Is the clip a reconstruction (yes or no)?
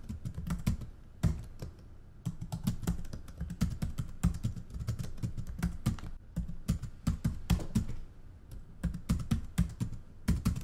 no